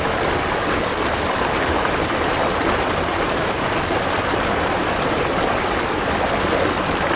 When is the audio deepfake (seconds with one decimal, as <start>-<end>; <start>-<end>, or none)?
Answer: none